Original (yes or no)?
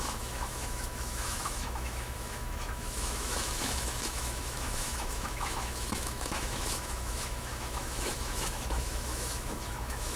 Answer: no